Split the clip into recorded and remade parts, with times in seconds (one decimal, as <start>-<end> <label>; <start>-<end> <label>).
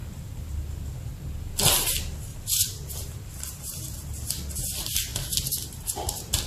0.0-1.5 remade; 1.5-2.3 recorded; 2.3-3.3 remade; 3.3-5.1 recorded; 5.1-6.5 remade